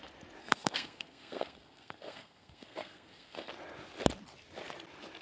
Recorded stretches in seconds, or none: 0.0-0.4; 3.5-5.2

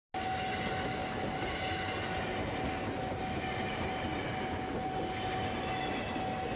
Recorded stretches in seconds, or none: 0.0-6.6

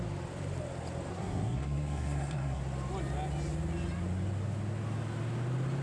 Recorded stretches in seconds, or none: 0.0-1.1; 2.6-5.8

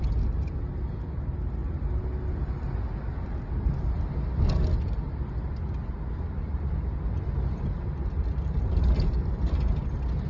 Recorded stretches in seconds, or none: 0.0-10.3

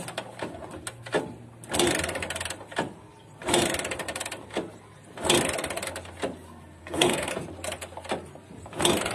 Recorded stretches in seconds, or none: 0.0-6.8; 7.3-9.1